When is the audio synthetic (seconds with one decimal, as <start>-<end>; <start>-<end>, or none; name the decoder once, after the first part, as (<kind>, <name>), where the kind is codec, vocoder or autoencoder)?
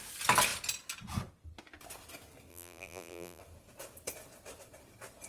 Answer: 2.5-3.4 (vocoder, BigVGAN v2)